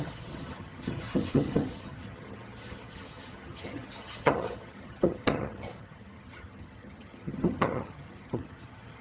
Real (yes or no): no